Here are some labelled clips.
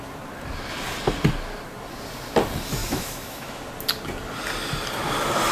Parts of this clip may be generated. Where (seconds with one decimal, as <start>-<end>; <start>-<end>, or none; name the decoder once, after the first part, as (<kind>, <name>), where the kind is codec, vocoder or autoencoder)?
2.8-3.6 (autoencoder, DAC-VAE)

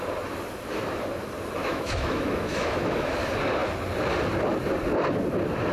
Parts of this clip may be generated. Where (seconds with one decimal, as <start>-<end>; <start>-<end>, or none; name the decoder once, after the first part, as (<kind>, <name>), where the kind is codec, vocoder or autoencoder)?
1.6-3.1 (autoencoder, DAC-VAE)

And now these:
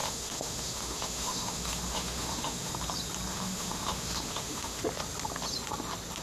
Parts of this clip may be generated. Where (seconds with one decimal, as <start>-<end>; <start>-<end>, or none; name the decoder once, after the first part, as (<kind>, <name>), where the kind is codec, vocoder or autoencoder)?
0.0-2.7 (autoencoder, DAC-VAE); 3.3-4.8

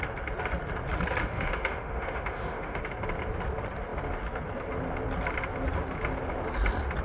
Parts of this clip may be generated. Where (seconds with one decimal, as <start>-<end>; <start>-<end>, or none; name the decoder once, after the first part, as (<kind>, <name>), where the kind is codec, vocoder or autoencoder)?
1.2-2.8 (autoencoder, DAC-VAE)

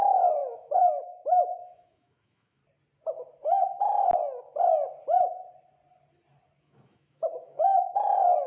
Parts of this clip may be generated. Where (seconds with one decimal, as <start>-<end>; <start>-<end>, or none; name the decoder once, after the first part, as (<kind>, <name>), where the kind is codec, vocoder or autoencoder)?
0.0-2.6 (autoencoder, DAC-VAE); 6.6-8.5